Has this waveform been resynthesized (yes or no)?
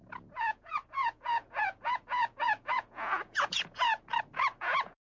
yes